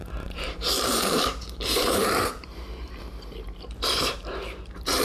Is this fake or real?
fake